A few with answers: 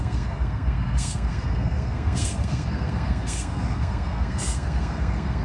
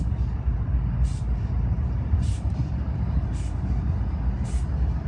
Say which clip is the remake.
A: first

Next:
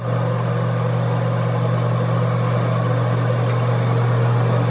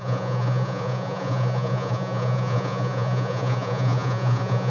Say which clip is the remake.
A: second